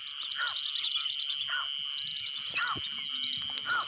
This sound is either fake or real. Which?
real